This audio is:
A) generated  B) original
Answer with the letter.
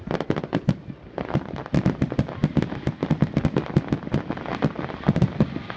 B